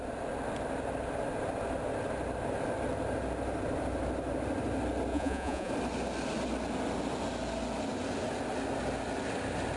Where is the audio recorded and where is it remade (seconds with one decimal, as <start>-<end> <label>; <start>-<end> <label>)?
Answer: 0.0-5.1 recorded; 5.1-5.7 remade; 5.7-9.8 recorded